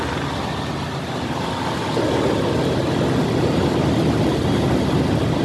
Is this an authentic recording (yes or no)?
yes